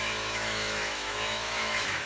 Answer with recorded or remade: remade